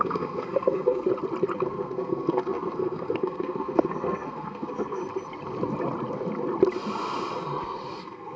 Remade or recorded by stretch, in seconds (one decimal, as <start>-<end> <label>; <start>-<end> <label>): 0.0-1.1 remade; 1.1-1.6 recorded; 1.6-5.0 remade; 5.0-8.0 recorded; 8.0-8.4 remade